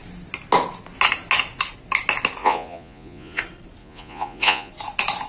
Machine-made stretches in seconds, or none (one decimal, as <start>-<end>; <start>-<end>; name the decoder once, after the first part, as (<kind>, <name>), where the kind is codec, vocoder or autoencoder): 2.4-3.4 (vocoder, Vocos); 3.8-4.7